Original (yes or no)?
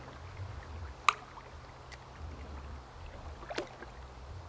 yes